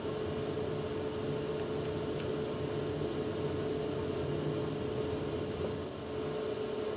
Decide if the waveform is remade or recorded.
recorded